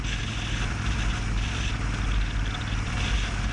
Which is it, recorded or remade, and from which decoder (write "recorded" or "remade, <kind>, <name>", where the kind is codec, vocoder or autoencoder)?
recorded